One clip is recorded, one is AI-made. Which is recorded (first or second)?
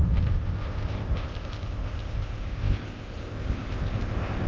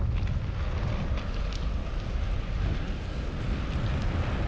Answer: second